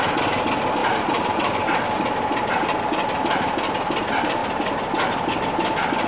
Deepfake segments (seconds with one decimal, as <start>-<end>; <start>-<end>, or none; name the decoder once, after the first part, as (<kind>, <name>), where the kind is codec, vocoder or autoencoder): none